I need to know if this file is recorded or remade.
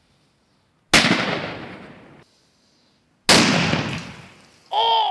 recorded